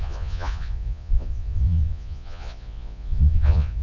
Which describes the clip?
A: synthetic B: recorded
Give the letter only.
A